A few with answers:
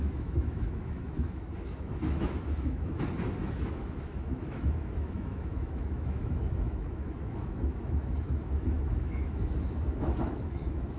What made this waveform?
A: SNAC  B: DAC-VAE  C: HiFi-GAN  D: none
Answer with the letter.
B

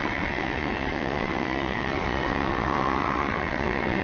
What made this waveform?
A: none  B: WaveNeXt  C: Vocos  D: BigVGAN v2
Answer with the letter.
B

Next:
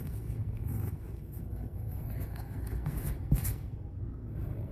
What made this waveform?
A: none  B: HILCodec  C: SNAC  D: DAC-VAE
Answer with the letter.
C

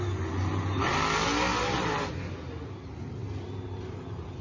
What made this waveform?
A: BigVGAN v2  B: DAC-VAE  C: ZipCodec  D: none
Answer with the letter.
D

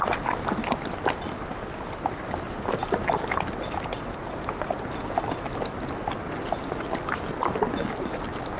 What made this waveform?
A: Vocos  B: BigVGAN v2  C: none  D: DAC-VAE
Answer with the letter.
C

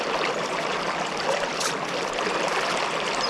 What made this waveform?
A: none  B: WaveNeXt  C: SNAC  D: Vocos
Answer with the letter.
A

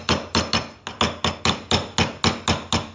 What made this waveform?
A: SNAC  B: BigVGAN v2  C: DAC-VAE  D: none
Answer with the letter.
D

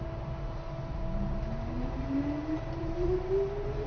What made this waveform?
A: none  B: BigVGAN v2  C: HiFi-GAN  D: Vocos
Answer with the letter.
B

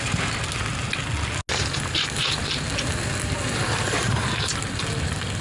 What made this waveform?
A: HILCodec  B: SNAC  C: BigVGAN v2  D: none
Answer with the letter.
D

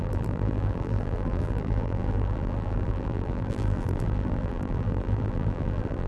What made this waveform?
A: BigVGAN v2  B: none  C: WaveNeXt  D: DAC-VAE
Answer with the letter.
A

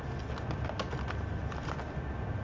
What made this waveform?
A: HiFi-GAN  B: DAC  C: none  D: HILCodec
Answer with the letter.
C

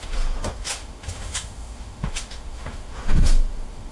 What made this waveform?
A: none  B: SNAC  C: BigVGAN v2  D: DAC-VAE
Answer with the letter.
D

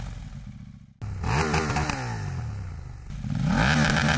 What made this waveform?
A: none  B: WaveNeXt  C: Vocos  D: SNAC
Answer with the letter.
A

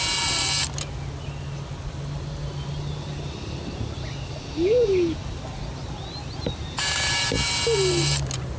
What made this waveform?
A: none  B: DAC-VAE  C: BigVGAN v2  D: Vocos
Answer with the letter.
A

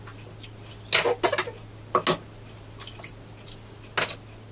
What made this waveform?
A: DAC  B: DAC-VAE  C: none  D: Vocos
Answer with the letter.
C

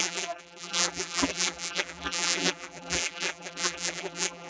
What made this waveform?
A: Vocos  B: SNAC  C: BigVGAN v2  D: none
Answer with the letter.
C